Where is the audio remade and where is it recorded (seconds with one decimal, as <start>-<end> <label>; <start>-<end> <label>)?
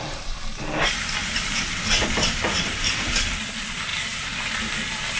0.0-1.2 recorded; 1.2-3.1 remade; 3.1-3.9 recorded; 3.9-4.4 remade; 4.4-5.2 recorded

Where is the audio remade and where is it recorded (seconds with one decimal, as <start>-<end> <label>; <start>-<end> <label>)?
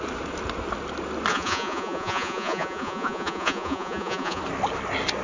0.0-1.3 recorded; 1.3-4.4 remade; 4.4-5.2 recorded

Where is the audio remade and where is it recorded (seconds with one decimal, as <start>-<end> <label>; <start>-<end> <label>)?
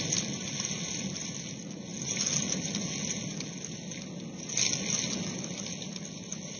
0.0-6.6 recorded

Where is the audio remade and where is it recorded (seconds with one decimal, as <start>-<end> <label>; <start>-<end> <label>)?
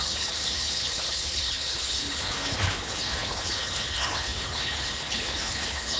0.0-6.0 remade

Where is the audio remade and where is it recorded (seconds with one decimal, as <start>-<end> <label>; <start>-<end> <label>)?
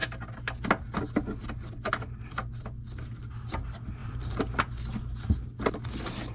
0.0-6.3 recorded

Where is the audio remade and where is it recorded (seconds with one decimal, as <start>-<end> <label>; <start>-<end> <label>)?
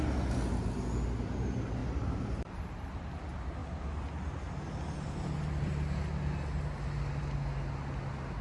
0.0-1.8 recorded; 1.8-3.0 remade; 3.0-8.4 recorded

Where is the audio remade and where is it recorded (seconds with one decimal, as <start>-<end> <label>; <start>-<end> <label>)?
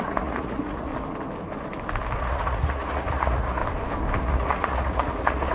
0.0-0.9 remade; 0.9-2.2 recorded; 2.2-3.6 remade; 3.6-4.2 recorded; 4.2-5.5 remade